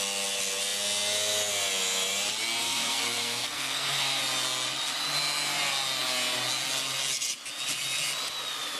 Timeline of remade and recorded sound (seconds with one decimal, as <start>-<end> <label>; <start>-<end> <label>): 0.0-2.6 recorded; 2.6-4.2 remade; 4.2-8.8 recorded